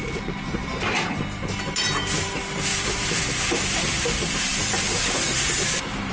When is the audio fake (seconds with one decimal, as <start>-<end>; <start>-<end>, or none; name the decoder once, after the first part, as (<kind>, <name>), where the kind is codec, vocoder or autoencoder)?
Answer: 0.0-6.1 (vocoder, BigVGAN v2)